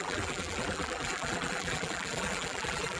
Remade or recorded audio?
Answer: remade